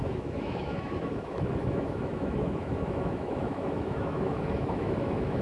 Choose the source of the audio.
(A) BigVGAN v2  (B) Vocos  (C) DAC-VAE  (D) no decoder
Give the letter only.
C